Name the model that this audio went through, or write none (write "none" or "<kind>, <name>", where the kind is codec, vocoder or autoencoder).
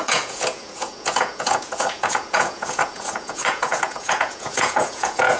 vocoder, Vocos